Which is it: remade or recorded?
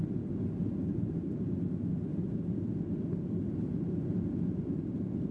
recorded